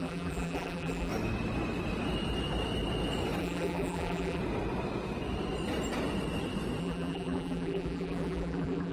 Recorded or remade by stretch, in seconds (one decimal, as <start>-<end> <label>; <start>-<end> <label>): 0.0-1.1 remade; 1.1-3.4 recorded; 3.4-4.4 remade; 4.4-6.8 recorded; 6.8-8.9 remade